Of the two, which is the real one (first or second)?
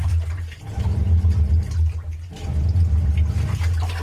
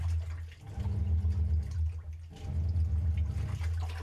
second